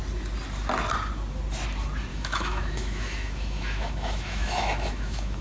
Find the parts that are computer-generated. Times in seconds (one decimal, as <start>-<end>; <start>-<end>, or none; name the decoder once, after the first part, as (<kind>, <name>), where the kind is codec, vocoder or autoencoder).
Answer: 2.1-5.4 (autoencoder, DAC-VAE)